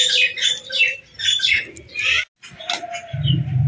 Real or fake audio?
real